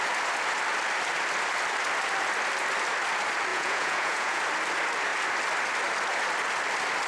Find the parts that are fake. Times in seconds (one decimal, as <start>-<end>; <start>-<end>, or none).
3.5-4.4